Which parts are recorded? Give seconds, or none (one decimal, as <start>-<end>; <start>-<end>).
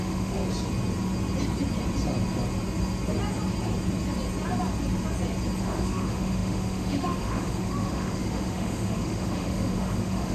0.4-5.6